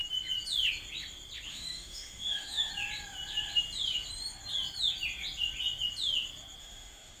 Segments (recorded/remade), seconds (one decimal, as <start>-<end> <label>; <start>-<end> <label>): 0.0-1.5 recorded; 1.5-2.7 remade; 2.7-6.6 recorded; 6.6-7.2 remade